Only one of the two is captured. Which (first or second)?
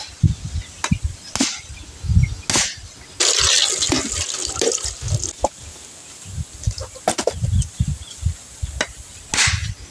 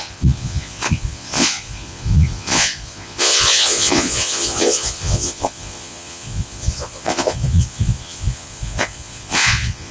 first